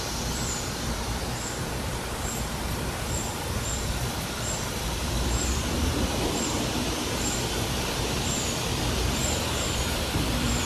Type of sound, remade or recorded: remade